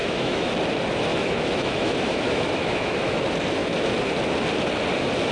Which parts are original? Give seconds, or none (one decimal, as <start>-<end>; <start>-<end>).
0.5-1.1; 3.2-5.3